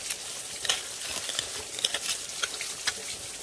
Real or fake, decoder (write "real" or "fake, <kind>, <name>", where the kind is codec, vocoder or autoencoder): real